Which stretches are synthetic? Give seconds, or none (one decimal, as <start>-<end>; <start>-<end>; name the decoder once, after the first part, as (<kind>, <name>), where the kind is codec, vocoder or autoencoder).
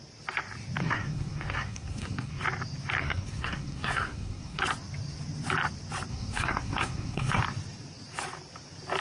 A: 0.8-2.4 (codec, SNAC); 3.0-4.6; 6.1-7.4